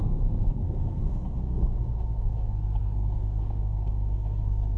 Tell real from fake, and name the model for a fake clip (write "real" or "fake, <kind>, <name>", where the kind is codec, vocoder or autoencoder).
fake, codec, SNAC